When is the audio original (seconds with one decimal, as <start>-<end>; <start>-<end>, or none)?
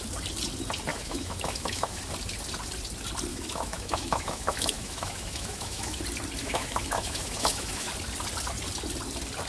0.0-0.9; 2.0-3.3; 6.0-6.4; 7.9-9.5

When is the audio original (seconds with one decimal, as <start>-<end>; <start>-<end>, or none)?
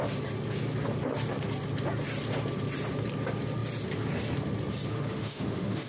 0.0-4.9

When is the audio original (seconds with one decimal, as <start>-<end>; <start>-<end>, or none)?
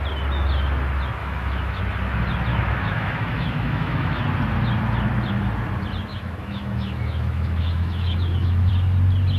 0.0-1.2; 1.8-2.5; 4.2-6.1; 8.7-9.4